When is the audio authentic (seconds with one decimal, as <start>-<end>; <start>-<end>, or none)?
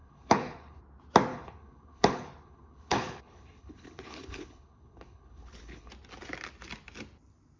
0.8-1.3; 5.9-7.6